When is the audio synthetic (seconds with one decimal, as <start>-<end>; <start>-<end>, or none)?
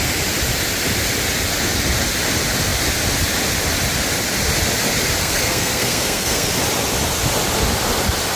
5.2-6.5